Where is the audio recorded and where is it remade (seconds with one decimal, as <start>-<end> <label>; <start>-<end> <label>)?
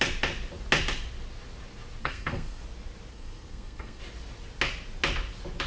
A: 0.0-2.0 recorded; 2.0-2.6 remade; 2.6-3.1 recorded; 3.1-4.0 remade; 4.0-5.7 recorded